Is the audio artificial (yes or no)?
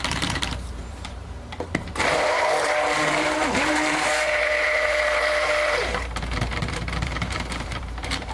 yes